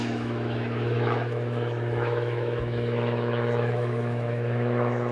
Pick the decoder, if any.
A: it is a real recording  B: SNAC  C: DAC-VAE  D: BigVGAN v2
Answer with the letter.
C